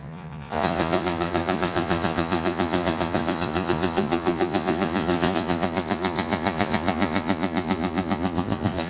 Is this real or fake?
fake